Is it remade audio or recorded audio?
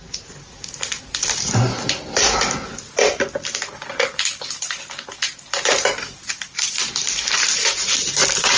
recorded